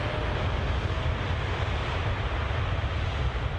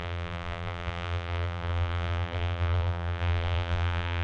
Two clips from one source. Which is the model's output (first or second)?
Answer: second